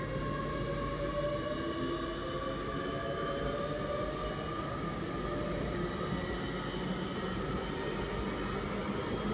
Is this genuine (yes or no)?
yes